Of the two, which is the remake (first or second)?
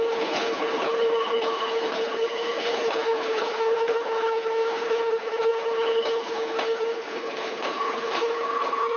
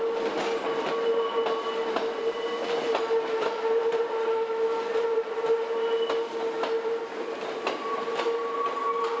first